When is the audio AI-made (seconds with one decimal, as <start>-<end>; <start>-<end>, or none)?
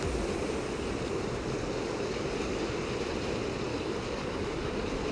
1.8-2.6; 3.7-5.1